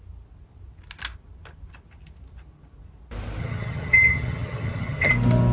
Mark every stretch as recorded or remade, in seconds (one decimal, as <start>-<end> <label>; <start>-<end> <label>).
0.0-3.4 recorded; 3.4-5.1 remade; 5.1-5.5 recorded